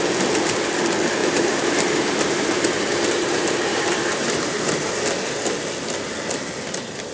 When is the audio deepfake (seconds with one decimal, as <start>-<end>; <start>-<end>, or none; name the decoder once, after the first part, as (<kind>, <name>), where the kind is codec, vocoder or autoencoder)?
1.2-4.9 (vocoder, BigVGAN v2)